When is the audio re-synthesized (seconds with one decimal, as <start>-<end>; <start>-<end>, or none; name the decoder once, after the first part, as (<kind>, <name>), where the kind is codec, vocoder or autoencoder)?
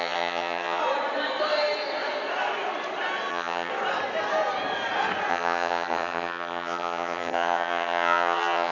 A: 0.0-0.8 (vocoder, HiFi-GAN); 3.3-3.7; 5.3-8.7